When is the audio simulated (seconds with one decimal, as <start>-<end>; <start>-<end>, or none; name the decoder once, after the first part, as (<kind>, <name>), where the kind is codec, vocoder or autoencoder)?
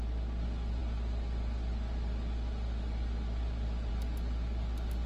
none